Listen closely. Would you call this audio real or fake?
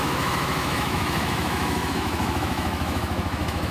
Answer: fake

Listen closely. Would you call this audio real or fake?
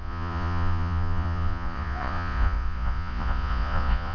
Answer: fake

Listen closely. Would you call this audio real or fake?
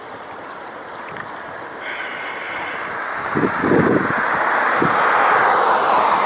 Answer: real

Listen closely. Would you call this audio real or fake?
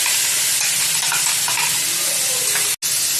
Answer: real